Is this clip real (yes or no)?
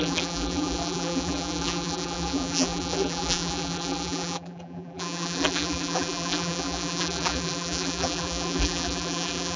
no